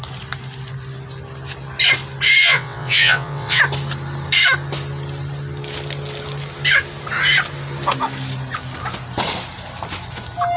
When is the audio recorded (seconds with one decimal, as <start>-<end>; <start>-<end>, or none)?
0.0-2.4; 3.6-10.6